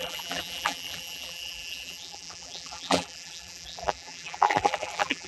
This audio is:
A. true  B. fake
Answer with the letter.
B